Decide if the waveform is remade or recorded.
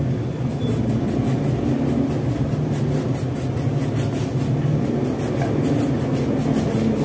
recorded